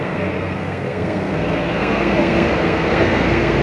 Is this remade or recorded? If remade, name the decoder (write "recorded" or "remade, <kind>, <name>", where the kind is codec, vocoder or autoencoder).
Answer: remade, codec, SNAC